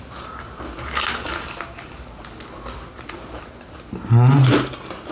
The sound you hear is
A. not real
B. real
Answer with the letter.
B